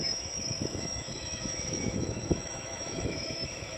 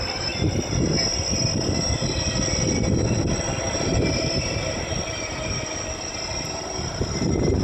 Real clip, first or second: second